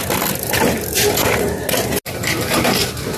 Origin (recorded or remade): recorded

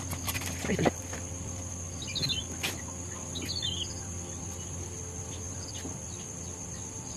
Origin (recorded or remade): recorded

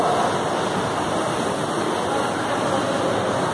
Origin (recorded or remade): recorded